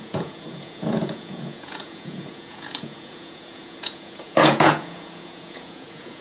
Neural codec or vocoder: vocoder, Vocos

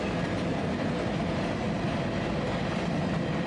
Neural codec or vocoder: none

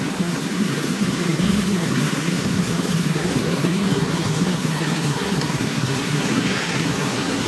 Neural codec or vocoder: codec, SNAC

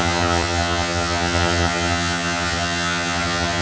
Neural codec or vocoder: vocoder, HiFi-GAN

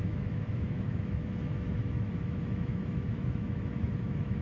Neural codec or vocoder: autoencoder, DAC-VAE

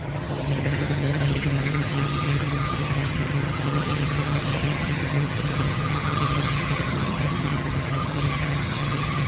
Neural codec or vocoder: vocoder, HiFi-GAN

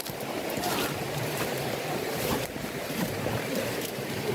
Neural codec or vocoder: vocoder, BigVGAN v2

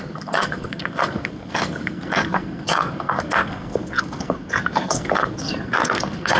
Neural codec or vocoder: codec, SNAC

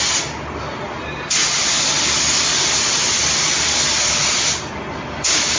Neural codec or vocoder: none